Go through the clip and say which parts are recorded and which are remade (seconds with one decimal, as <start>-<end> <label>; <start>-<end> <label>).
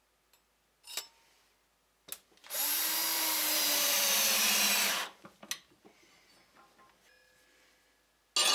0.0-2.4 recorded; 2.4-5.5 remade; 5.5-8.5 recorded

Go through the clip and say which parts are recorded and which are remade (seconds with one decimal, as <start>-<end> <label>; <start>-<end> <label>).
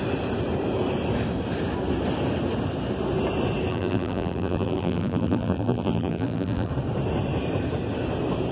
0.0-3.7 recorded; 3.7-6.7 remade; 6.7-8.5 recorded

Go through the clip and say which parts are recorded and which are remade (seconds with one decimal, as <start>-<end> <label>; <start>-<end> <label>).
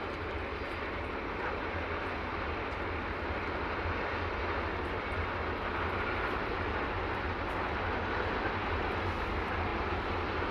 0.0-10.5 recorded